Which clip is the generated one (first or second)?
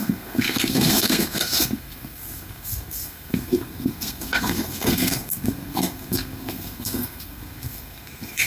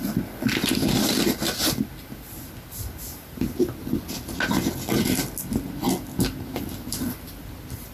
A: first